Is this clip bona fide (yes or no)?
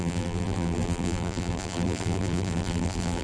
no